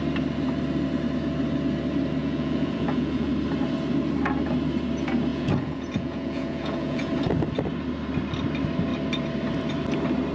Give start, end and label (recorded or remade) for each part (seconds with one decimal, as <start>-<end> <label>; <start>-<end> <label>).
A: 0.0-2.2 recorded; 2.2-3.3 remade; 3.3-5.3 recorded; 5.3-7.1 remade; 7.1-10.3 recorded

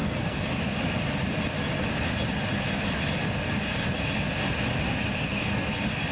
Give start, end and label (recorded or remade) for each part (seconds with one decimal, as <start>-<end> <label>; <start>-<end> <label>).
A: 0.0-0.5 remade; 0.5-6.1 recorded

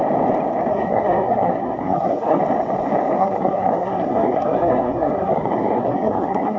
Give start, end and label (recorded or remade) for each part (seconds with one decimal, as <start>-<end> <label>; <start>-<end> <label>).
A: 0.0-0.7 recorded; 0.7-2.4 remade; 2.4-3.2 recorded; 3.2-6.6 remade

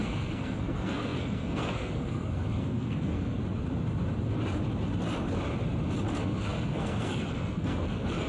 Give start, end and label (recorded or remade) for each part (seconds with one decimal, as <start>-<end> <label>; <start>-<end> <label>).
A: 0.0-3.4 remade; 3.4-6.1 recorded; 6.1-8.3 remade

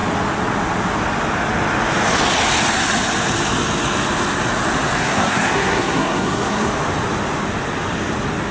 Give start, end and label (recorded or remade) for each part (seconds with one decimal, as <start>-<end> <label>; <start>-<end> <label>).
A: 0.0-5.0 recorded; 5.0-6.7 remade; 6.7-8.5 recorded

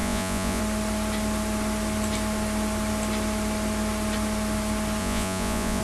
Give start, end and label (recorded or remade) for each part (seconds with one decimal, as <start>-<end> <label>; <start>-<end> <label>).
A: 0.0-0.6 remade; 0.6-5.0 recorded; 5.0-5.8 remade

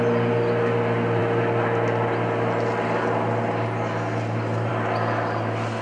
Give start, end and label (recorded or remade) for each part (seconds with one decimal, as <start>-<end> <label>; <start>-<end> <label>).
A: 0.0-5.8 recorded

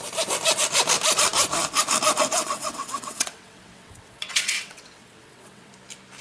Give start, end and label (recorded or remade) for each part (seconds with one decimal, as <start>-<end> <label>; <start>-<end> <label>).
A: 0.0-2.4 recorded; 2.4-5.7 remade; 5.7-6.2 recorded